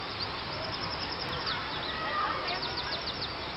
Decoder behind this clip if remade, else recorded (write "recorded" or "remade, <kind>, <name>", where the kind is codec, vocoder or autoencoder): recorded